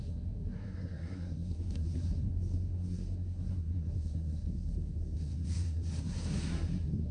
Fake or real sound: fake